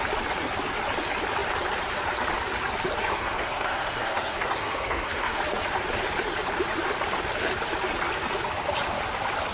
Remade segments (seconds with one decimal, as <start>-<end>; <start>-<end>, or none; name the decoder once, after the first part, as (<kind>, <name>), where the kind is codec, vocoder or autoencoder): 3.1-5.4 (codec, SNAC)